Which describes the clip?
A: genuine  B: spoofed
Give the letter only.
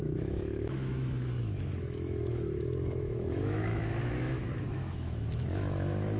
B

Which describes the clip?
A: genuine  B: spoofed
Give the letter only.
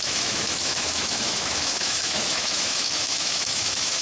B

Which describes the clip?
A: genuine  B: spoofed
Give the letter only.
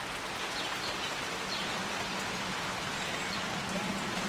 A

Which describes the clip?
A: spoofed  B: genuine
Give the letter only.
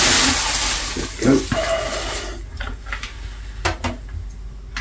B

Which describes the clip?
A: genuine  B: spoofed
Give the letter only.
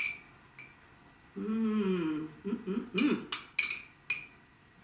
A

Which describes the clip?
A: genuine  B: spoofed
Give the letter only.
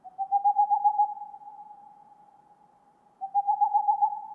A